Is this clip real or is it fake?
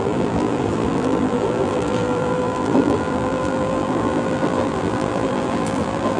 fake